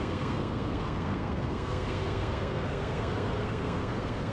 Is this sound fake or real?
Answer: fake